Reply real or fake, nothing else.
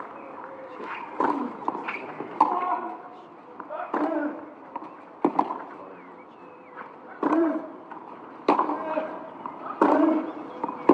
fake